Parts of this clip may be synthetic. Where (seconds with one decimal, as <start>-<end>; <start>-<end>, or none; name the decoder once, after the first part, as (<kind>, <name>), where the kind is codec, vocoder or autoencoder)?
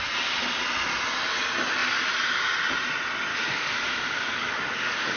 3.3-5.2 (codec, DAC)